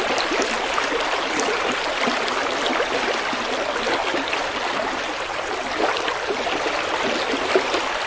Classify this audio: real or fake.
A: real